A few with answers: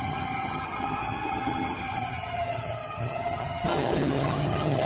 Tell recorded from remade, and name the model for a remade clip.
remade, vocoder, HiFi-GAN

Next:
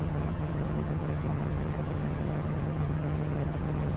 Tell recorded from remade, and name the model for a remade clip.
remade, vocoder, HiFi-GAN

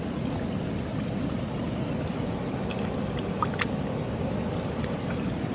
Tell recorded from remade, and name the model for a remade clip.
recorded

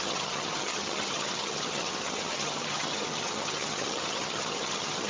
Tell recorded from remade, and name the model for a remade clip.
remade, vocoder, HiFi-GAN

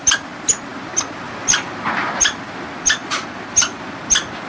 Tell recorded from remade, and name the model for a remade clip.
recorded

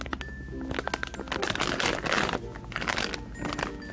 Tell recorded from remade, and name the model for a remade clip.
recorded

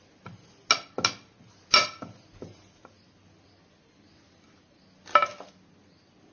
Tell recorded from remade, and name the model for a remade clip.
recorded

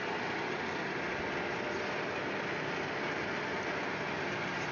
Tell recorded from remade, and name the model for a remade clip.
recorded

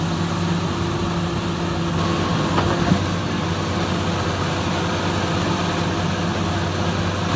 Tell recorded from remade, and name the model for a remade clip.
recorded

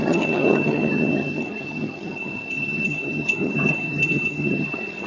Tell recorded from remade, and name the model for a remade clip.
remade, vocoder, HiFi-GAN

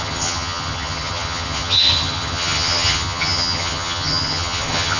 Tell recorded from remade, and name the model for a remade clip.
remade, vocoder, HiFi-GAN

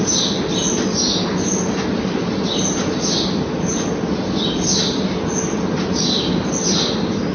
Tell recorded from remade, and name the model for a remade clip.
recorded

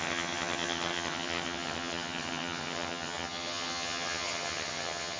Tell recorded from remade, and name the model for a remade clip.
remade, vocoder, HiFi-GAN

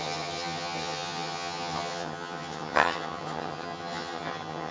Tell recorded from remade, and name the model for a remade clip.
remade, vocoder, HiFi-GAN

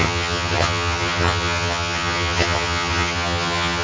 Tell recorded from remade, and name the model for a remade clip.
remade, vocoder, HiFi-GAN